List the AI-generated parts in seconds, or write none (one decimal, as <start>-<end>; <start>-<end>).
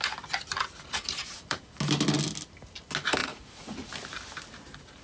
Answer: 1.2-1.8; 3.2-3.9